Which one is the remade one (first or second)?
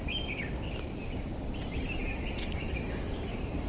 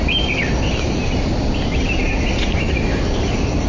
first